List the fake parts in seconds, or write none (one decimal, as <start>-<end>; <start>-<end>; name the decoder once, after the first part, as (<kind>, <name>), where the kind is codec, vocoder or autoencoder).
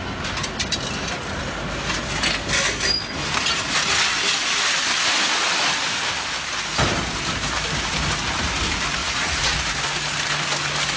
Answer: 9.0-9.6 (vocoder, Vocos)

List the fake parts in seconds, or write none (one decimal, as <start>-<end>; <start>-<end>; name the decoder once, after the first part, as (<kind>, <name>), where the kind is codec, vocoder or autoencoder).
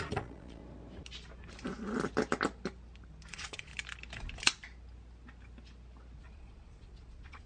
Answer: 0.0-0.6 (vocoder, Vocos); 3.3-3.7; 6.2-7.5